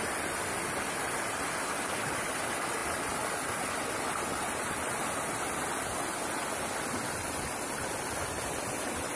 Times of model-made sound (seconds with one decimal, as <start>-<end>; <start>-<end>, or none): none